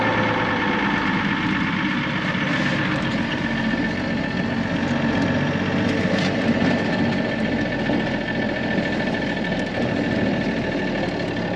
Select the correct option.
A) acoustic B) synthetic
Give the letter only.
A